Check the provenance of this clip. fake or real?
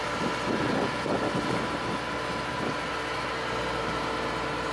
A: real